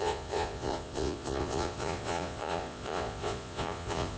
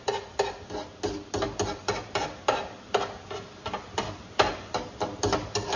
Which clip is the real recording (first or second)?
second